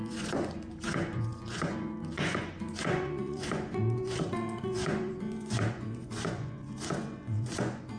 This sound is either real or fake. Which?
fake